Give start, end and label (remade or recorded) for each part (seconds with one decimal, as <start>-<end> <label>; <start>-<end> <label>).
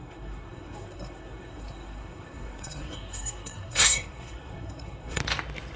0.0-5.2 remade; 5.2-5.8 recorded